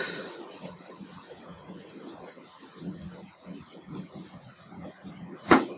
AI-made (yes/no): yes